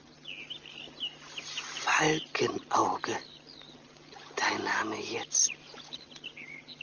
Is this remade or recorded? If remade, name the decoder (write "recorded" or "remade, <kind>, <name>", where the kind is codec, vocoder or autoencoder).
recorded